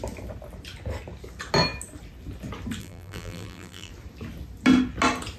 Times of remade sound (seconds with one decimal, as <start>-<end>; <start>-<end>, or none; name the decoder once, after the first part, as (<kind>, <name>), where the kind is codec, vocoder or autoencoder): 2.8-3.9 (vocoder, BigVGAN v2)